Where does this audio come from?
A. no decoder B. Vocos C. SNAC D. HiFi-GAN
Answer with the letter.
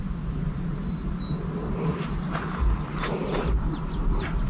A